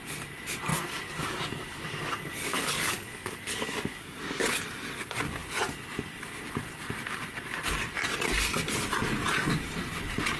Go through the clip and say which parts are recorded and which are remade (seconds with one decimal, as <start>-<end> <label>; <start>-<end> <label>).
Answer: 0.0-0.7 recorded; 0.7-4.5 remade; 4.5-10.4 recorded